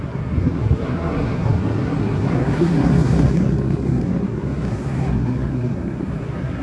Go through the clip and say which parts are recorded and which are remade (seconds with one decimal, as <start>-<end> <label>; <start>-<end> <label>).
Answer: 0.0-6.6 remade